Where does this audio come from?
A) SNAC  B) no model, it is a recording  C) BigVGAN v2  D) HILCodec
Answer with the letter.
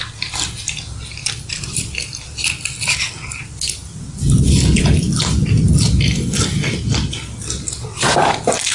B